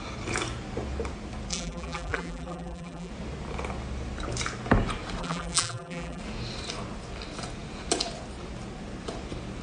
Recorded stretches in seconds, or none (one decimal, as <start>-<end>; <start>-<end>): 0.0-1.5; 3.1-5.2; 6.2-9.6